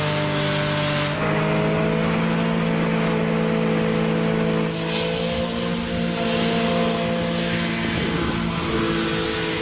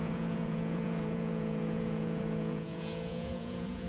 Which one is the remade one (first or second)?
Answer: second